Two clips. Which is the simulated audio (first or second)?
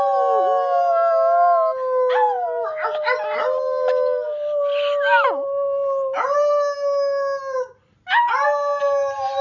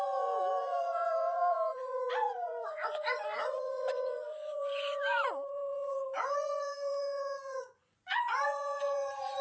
second